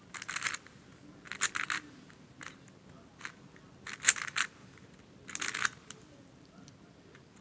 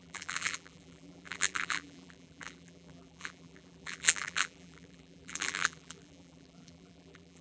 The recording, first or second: first